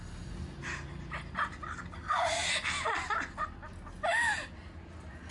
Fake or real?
real